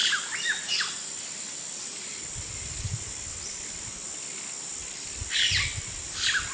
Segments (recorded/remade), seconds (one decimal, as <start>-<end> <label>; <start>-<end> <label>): 0.0-3.0 remade; 3.0-6.5 recorded